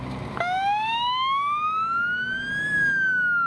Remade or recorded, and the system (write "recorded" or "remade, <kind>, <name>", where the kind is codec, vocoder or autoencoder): recorded